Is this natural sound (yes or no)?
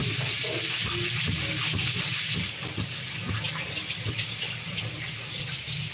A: yes